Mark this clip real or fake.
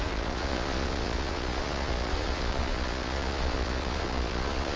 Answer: fake